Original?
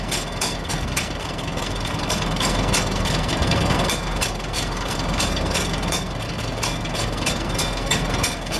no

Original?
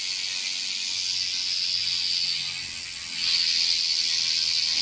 yes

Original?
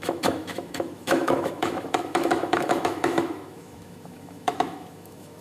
no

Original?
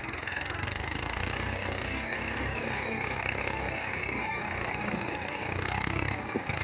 no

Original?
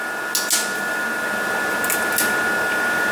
yes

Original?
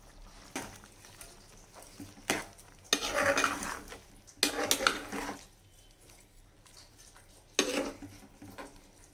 yes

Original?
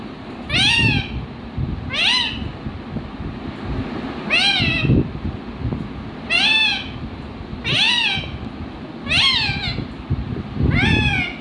yes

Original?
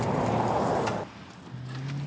yes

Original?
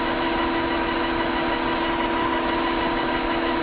yes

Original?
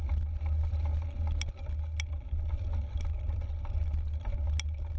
yes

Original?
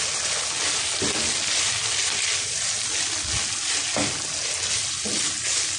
yes